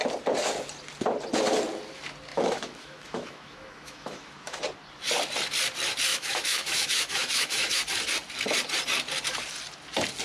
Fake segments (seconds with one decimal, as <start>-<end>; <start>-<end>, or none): 2.3-4.6; 6.1-7.8